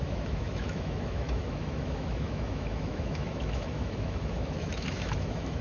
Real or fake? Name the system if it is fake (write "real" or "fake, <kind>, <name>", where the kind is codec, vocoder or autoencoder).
fake, autoencoder, DAC-VAE